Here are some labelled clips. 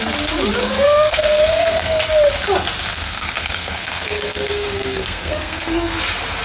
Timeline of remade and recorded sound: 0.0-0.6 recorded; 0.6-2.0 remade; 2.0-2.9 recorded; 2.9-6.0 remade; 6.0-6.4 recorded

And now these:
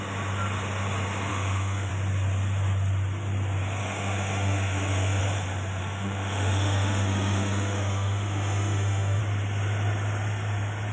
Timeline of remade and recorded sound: 0.0-1.3 recorded; 1.3-1.9 remade; 1.9-3.8 recorded; 3.8-5.2 remade; 5.2-5.8 recorded; 5.8-9.2 remade; 9.2-10.9 recorded

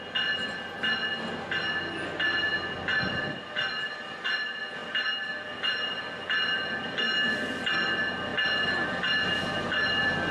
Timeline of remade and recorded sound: 0.0-10.3 recorded

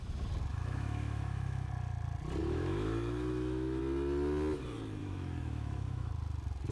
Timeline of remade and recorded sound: 0.0-0.5 recorded; 0.5-1.7 remade; 1.7-2.4 recorded; 2.4-3.8 remade; 3.8-5.0 recorded; 5.0-6.1 remade; 6.1-6.7 recorded